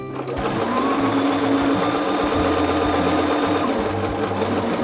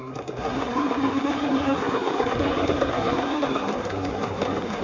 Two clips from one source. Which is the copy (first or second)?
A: second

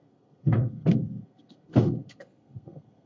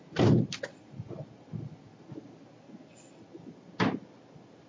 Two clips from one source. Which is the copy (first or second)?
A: first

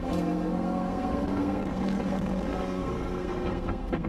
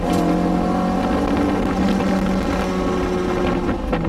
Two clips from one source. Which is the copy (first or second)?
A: first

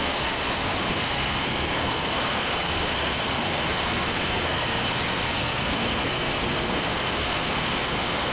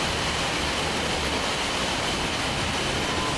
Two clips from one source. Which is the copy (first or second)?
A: first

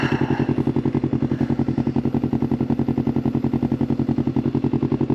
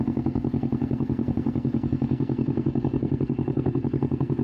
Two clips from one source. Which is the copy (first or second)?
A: second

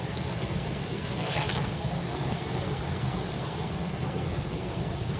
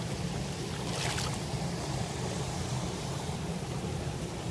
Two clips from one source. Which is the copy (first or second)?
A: first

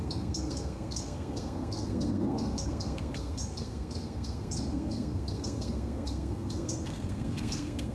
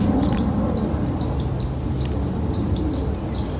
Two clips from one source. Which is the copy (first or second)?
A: first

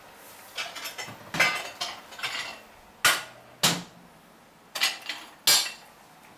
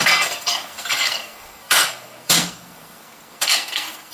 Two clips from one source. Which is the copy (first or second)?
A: second